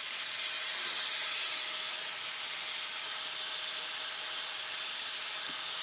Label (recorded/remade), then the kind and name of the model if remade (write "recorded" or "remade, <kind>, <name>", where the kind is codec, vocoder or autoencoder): recorded